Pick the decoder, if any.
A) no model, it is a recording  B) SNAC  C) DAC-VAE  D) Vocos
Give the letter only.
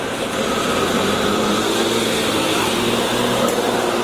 A